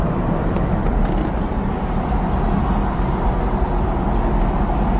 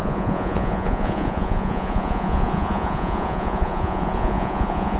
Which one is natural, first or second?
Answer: first